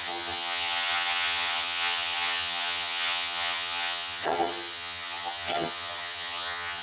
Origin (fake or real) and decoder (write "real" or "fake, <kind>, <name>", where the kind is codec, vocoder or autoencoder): fake, vocoder, HiFi-GAN